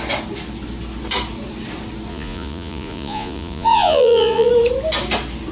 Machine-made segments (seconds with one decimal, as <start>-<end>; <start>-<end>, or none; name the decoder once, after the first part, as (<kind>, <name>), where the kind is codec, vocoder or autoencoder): 2.1-4.5 (vocoder, Vocos)